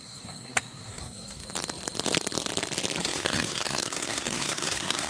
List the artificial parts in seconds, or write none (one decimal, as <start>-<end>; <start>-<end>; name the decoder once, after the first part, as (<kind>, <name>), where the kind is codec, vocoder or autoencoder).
0.0-1.4 (codec, SNAC); 3.0-5.1